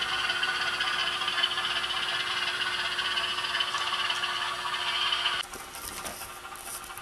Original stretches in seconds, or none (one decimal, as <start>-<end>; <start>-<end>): 0.0-7.0